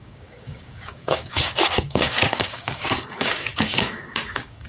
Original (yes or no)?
no